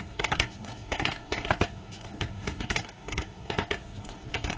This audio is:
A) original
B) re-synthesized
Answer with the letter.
B